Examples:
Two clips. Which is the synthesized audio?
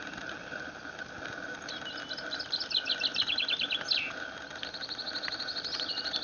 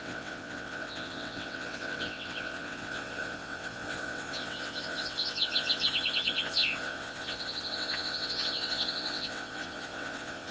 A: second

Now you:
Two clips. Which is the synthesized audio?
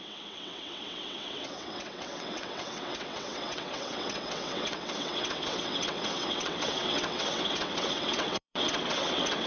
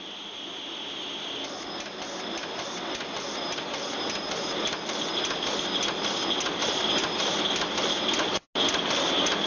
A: first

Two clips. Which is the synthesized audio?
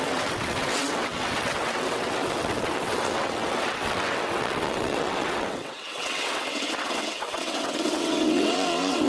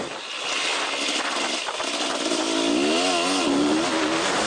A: first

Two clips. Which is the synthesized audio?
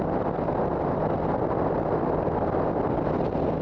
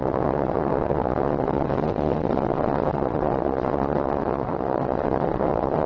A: second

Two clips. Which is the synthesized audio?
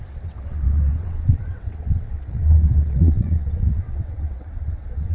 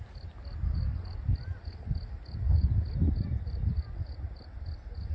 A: first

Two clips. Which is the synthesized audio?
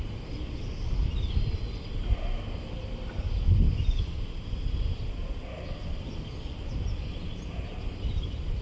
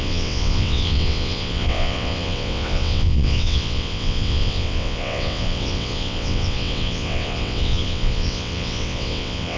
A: second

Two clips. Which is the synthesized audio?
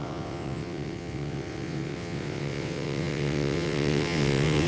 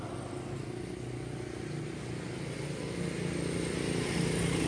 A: first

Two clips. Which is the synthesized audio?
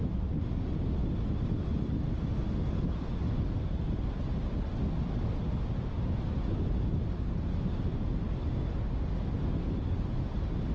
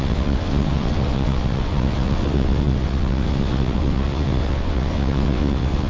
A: second